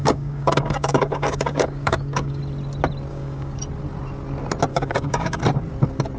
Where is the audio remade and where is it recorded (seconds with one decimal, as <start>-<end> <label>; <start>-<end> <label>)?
0.0-2.4 remade; 2.4-3.1 recorded; 3.1-3.6 remade; 3.6-4.7 recorded; 4.7-5.4 remade; 5.4-6.2 recorded